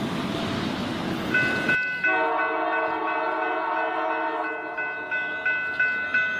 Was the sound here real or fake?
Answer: real